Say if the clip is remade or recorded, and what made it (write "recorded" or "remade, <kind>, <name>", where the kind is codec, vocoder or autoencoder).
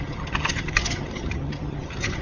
remade, vocoder, HiFi-GAN